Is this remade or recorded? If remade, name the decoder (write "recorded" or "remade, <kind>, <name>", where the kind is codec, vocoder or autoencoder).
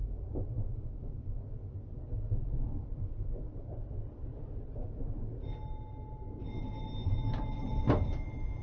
recorded